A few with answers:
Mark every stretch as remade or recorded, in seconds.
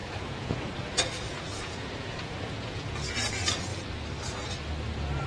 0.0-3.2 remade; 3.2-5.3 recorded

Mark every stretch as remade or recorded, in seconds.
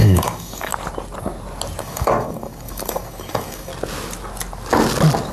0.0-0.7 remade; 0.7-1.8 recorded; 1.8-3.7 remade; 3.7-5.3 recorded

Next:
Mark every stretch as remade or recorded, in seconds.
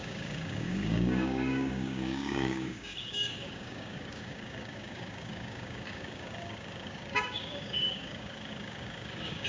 0.0-9.5 remade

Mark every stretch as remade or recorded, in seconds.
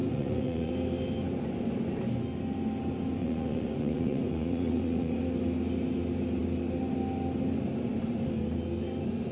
0.0-0.7 remade; 0.7-3.2 recorded; 3.2-5.2 remade; 5.2-9.3 recorded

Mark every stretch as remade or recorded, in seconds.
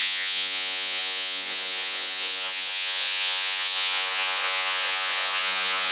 0.0-5.9 remade